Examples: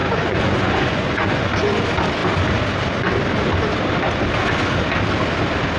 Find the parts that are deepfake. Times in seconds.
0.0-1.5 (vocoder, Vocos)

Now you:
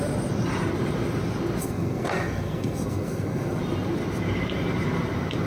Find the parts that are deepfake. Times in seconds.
1.6-3.6 (codec, SNAC)

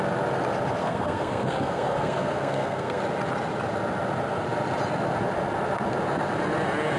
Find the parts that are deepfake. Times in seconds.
0.8-3.0 (codec, SNAC)

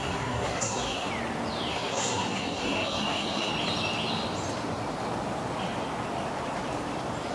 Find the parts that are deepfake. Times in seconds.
0.0-1.1 (codec, SNAC); 1.7-3.5

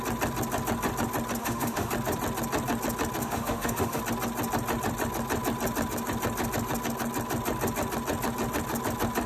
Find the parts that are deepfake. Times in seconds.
1.4-1.9 (autoencoder, DAC-VAE); 3.2-4.0

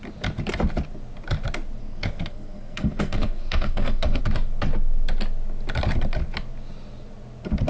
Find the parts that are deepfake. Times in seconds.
1.8-4.2 (codec, SNAC)

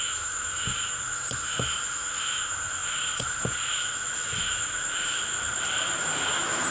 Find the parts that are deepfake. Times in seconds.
0.0-5.3 (autoencoder, DAC-VAE); 6.0-6.7

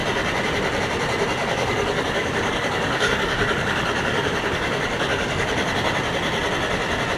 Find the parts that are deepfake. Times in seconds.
1.4-5.7 (codec, DAC)